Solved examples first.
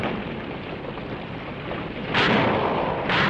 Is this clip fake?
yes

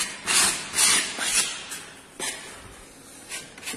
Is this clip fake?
no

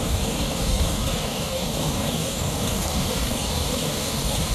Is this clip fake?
yes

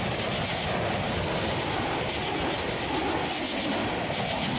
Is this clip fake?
no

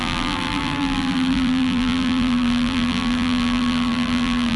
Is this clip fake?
yes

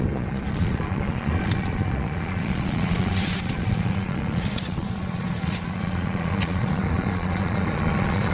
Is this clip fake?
yes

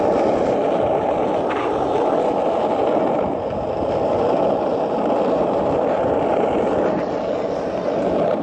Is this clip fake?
no